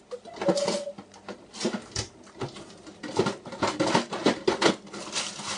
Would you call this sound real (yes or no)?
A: yes